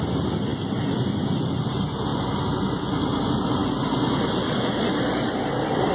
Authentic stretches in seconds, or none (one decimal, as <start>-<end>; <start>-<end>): 0.0-5.9